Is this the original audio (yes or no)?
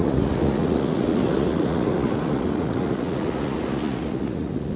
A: no